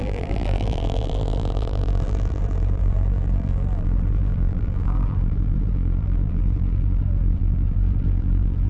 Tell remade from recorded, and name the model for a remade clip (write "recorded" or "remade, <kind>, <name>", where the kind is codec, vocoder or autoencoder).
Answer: remade, vocoder, BigVGAN v2